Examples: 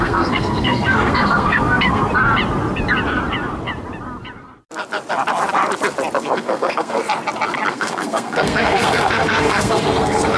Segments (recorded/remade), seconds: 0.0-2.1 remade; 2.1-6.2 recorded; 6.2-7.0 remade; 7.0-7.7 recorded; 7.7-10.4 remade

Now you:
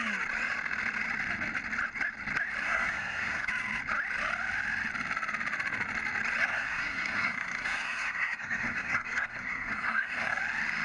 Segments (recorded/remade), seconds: 0.0-2.6 recorded; 2.6-3.5 remade; 3.5-6.4 recorded; 6.4-10.4 remade; 10.4-10.8 recorded

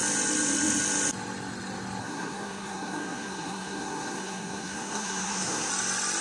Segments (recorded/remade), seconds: 0.0-2.0 recorded; 2.0-5.7 remade; 5.7-6.2 recorded

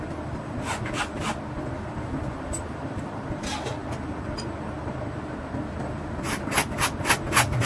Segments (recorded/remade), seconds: 0.0-7.7 recorded

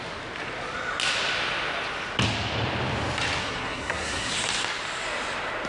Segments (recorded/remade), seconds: 0.0-3.4 recorded; 3.4-4.3 remade; 4.3-5.7 recorded

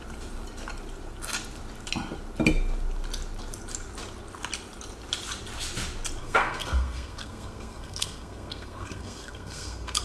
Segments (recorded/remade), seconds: 0.0-6.2 recorded; 6.2-10.0 remade